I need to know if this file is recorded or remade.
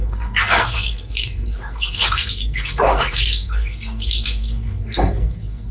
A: remade